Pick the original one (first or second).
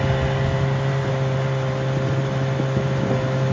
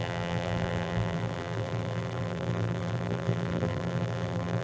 first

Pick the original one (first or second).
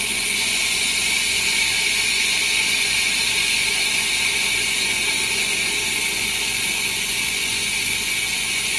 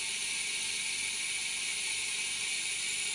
second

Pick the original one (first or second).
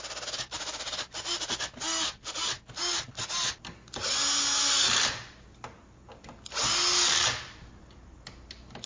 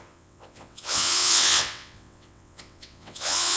first